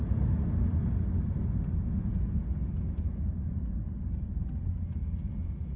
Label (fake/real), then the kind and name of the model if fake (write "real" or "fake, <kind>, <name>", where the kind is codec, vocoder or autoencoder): real